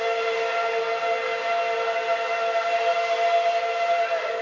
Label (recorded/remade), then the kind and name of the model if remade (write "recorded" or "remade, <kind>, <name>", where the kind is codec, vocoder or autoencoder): recorded